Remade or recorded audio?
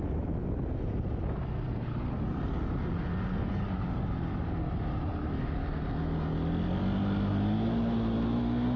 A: recorded